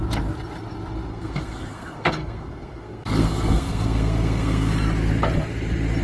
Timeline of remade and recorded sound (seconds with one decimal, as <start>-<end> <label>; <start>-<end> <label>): 0.0-1.1 recorded; 1.1-4.7 remade; 4.7-6.0 recorded